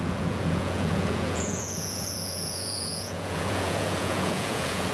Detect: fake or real fake